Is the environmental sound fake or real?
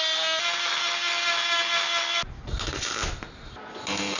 real